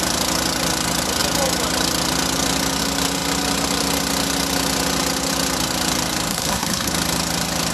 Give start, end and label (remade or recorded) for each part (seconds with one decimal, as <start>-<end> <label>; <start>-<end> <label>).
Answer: 0.0-6.3 recorded; 6.3-6.9 remade; 6.9-7.7 recorded